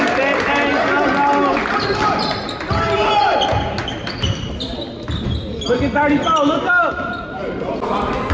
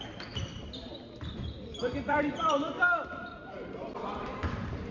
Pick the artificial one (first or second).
second